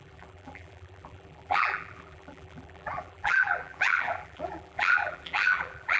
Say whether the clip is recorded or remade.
remade